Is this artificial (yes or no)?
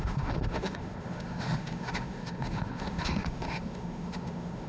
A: yes